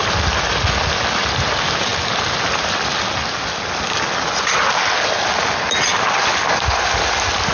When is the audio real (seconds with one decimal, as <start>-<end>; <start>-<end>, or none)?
0.0-7.5